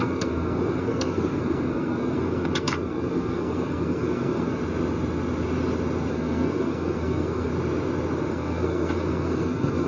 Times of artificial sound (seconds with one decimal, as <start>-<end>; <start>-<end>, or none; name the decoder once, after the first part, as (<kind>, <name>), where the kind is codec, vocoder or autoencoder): 0.0-4.6 (codec, SNAC); 6.1-7.5; 8.3-9.9